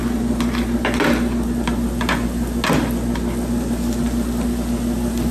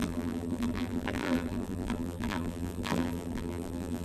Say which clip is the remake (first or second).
second